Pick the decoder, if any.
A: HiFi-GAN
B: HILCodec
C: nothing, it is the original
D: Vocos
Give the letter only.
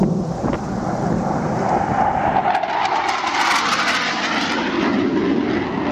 C